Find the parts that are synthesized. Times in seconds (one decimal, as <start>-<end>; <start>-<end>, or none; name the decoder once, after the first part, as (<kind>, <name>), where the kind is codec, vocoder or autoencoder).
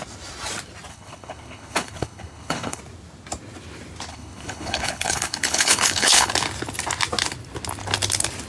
0.9-2.8 (codec, HILCodec); 4.1-6.3